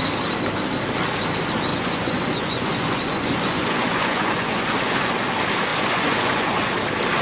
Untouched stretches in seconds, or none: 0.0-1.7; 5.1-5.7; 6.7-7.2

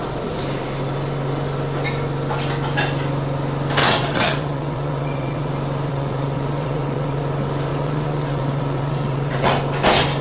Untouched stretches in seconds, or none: 0.0-3.8; 5.5-5.9; 7.2-7.7; 9.5-10.2

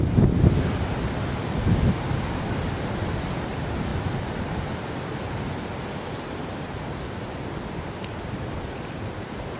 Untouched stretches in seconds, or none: 0.0-9.6

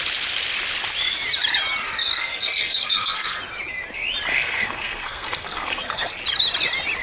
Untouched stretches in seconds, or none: 0.0-2.1; 3.4-4.3; 6.1-7.0

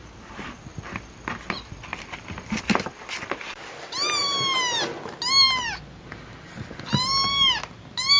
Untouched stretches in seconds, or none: 0.0-0.7; 1.3-1.9; 2.6-8.2